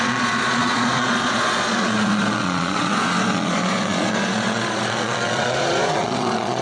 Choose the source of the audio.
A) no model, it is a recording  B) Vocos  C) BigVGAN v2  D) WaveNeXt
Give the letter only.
B